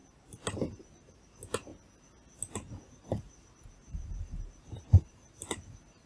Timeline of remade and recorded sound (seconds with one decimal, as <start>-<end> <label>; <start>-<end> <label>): 0.0-0.8 recorded; 0.8-1.7 remade; 1.7-2.9 recorded; 2.9-6.1 remade